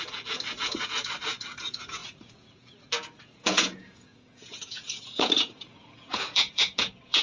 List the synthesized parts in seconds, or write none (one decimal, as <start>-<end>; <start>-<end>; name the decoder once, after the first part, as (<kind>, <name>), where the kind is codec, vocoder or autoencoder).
0.0-7.2 (vocoder, Vocos)

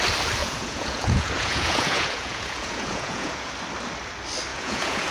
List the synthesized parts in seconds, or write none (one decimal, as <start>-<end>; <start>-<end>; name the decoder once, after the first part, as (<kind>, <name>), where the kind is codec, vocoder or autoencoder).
0.4-3.5 (vocoder, Vocos); 4.5-5.1